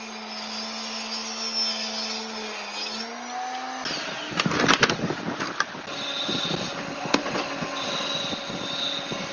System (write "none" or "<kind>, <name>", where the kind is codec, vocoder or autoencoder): none